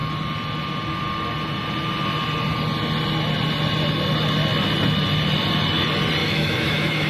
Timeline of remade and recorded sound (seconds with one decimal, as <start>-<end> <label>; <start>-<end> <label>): 0.0-6.2 recorded; 6.2-7.1 remade